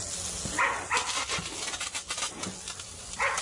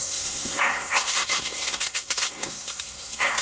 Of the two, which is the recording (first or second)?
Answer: first